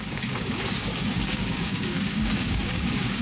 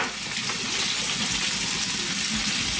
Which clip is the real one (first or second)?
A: second